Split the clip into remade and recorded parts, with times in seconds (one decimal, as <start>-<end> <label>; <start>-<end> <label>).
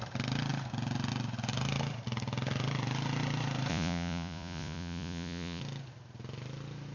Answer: 0.0-3.7 recorded; 3.7-5.6 remade; 5.6-6.9 recorded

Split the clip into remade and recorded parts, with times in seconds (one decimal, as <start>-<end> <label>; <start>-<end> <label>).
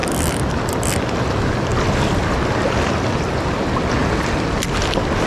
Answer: 0.0-5.3 recorded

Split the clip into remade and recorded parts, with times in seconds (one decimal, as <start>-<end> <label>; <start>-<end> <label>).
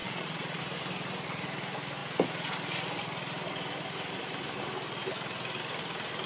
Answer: 0.0-0.6 remade; 0.6-6.3 recorded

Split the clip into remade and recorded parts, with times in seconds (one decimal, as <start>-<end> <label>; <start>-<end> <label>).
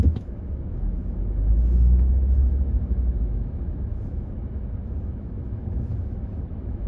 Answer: 0.0-6.9 remade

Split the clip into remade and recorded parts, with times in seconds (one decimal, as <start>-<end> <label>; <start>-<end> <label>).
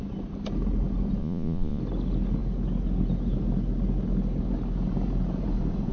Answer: 0.0-1.2 recorded; 1.2-1.8 remade; 1.8-5.9 recorded